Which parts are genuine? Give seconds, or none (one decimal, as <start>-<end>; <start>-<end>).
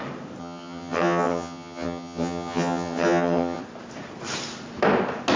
0.0-0.4; 3.6-5.4